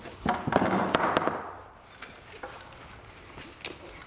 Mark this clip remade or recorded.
recorded